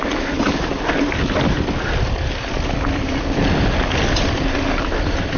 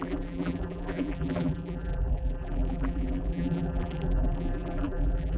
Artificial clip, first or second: second